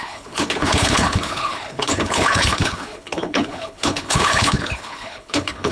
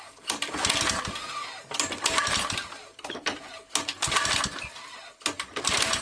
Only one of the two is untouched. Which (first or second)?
second